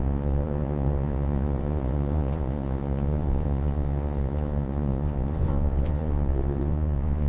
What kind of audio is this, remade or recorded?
remade